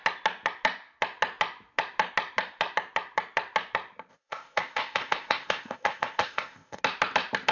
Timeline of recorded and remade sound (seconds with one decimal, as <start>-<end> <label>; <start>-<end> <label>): 0.0-4.1 recorded; 4.1-6.8 remade; 6.8-7.5 recorded